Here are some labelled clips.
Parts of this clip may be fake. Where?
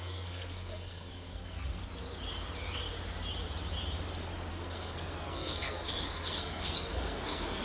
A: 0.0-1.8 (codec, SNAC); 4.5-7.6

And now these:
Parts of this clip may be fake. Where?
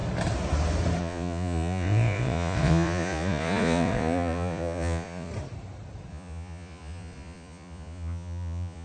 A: 1.0-5.3 (vocoder, Vocos); 6.1-8.8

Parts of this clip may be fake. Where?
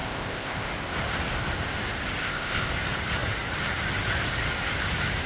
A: 0.0-0.7 (codec, ZipCodec); 2.2-2.7